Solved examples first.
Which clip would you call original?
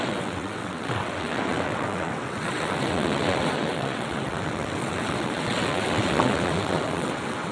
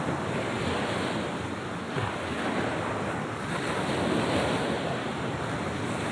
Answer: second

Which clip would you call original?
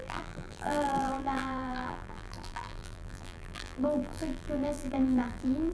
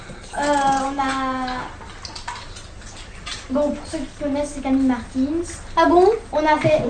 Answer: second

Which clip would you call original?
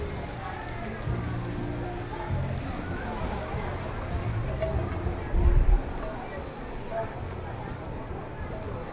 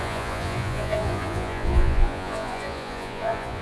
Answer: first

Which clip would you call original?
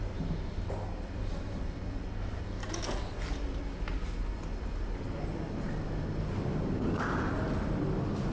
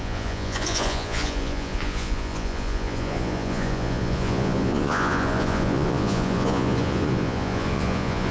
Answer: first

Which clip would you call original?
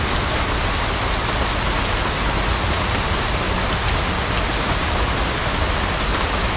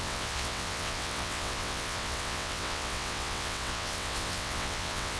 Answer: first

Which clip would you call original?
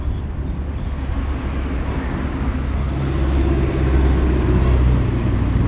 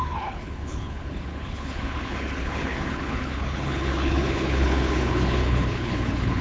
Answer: first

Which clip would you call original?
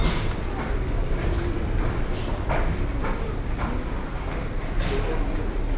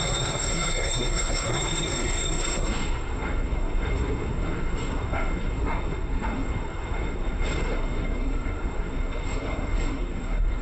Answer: first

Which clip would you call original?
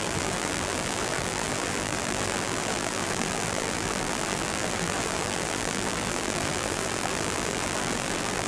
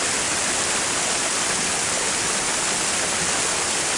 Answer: second